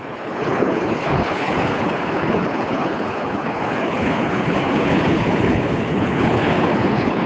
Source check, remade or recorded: remade